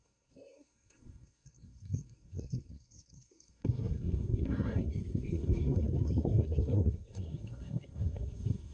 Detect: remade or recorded remade